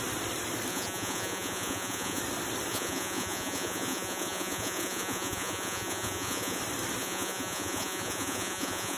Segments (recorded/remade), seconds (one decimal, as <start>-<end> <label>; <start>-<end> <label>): 0.0-0.7 recorded; 0.7-2.2 remade; 2.2-2.7 recorded; 2.7-6.6 remade; 6.6-7.0 recorded; 7.0-9.0 remade

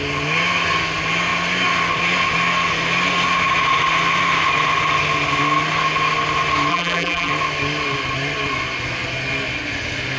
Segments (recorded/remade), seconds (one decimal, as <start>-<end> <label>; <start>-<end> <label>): 0.0-6.7 recorded; 6.7-7.3 remade; 7.3-10.2 recorded

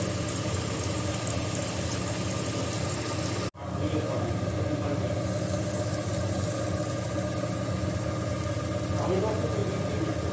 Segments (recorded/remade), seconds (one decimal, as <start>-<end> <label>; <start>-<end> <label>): 0.0-10.3 recorded